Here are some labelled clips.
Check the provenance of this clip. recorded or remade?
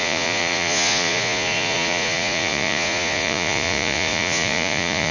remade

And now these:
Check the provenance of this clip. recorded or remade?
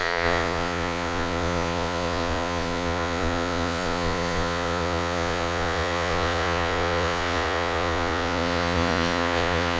remade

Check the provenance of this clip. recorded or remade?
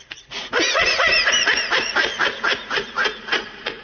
remade